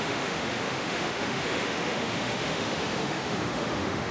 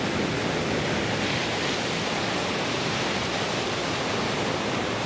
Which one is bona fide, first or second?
second